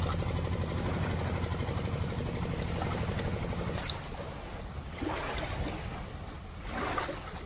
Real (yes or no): yes